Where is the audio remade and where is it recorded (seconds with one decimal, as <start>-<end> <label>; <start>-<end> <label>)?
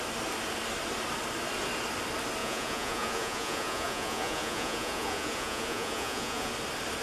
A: 0.0-2.4 recorded; 2.4-6.5 remade; 6.5-7.0 recorded